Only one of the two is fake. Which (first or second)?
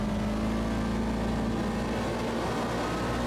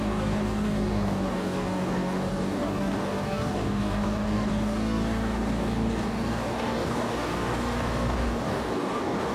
second